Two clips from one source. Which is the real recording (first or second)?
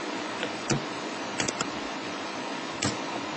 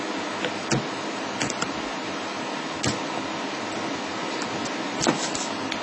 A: second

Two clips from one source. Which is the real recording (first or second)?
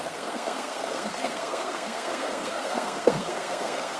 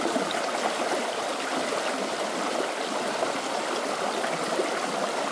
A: second